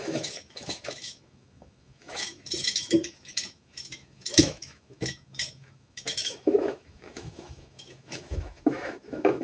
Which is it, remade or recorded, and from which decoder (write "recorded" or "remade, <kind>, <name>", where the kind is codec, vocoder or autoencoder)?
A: remade, autoencoder, DAC-VAE